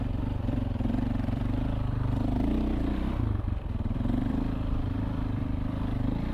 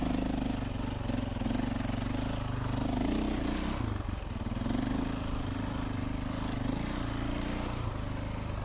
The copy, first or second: first